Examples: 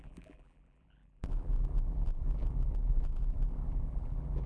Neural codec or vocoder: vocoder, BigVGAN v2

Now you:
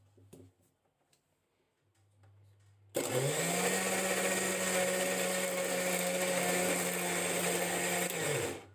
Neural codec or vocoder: none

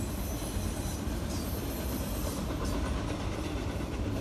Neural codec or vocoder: none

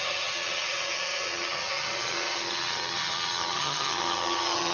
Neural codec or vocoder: vocoder, HiFi-GAN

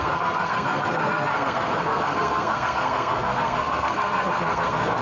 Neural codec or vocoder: codec, SNAC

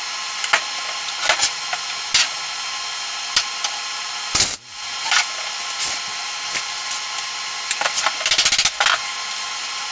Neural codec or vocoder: none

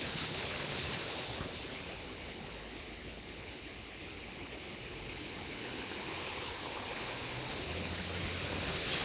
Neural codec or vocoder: codec, HILCodec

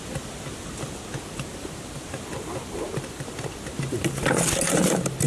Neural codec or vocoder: none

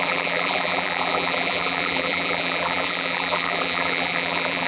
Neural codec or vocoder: vocoder, BigVGAN v2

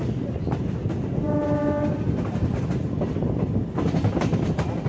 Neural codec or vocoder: none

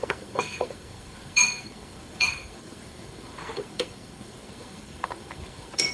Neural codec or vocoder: codec, SNAC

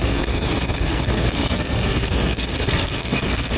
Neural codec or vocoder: codec, SNAC